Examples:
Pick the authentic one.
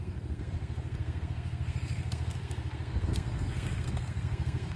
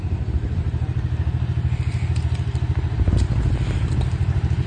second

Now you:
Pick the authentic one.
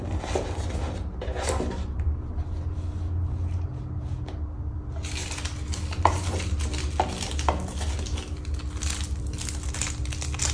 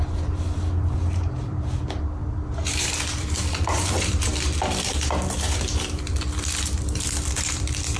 first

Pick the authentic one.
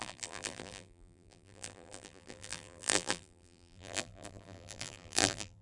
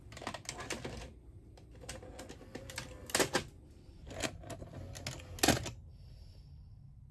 second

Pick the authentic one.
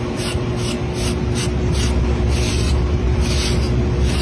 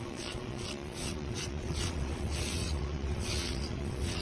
first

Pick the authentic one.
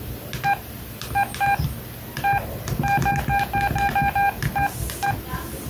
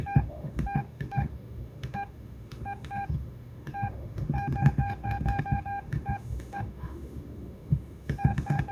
first